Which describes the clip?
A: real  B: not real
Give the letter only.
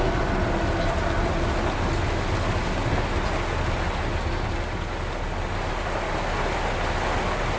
A